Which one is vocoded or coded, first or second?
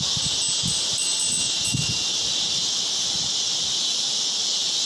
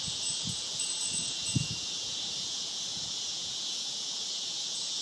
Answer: second